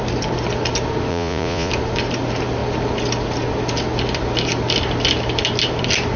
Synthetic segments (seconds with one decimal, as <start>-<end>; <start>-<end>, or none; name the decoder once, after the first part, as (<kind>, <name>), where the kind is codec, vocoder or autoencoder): 1.1-1.7 (vocoder, Vocos)